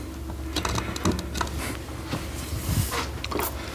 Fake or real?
real